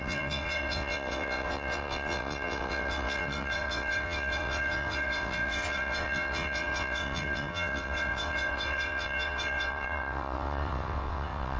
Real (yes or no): no